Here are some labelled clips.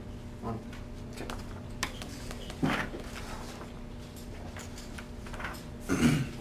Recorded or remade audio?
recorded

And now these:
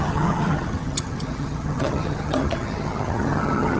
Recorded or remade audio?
remade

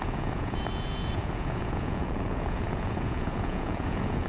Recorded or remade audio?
remade